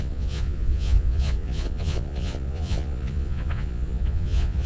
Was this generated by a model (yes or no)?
yes